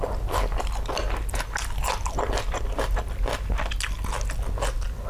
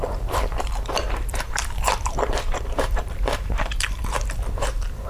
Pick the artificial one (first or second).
second